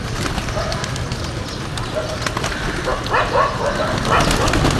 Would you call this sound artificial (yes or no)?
no